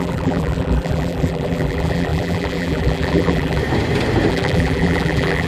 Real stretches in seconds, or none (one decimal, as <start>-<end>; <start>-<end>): 3.6-4.3